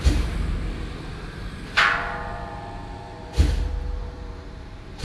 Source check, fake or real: fake